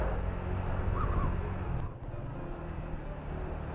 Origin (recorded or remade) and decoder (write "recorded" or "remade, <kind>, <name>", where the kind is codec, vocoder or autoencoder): recorded